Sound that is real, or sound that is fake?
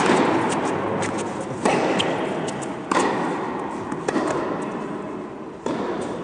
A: real